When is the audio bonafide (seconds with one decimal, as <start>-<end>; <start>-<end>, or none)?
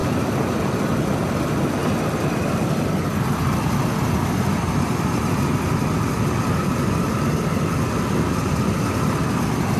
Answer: 1.8-6.1